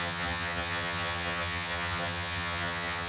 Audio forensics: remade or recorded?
remade